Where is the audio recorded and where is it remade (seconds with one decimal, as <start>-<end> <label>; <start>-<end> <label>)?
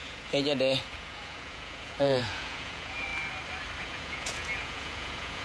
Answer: 0.0-3.1 remade; 3.1-3.8 recorded; 3.8-5.4 remade